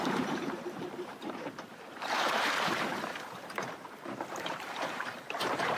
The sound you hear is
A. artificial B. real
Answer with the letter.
A